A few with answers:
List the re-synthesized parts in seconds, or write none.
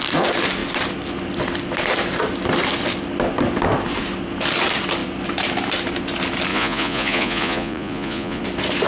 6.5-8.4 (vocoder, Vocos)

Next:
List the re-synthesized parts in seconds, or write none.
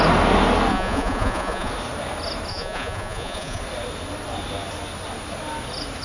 0.7-1.7 (vocoder, Vocos); 2.5-3.6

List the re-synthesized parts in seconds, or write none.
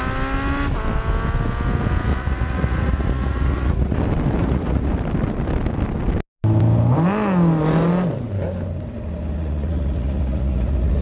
2.1-4.0 (vocoder, Vocos); 4.4-4.9; 9.4-11.0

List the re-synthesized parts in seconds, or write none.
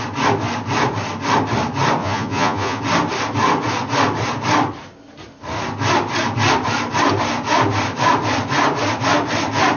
2.0-2.8 (vocoder, Vocos)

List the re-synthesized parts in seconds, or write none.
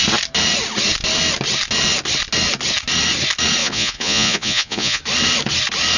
3.6-5.0 (vocoder, Vocos)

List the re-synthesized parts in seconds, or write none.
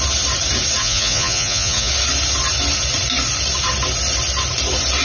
0.8-1.9 (vocoder, Vocos)